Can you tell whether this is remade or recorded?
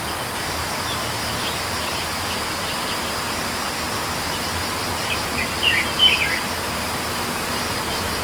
recorded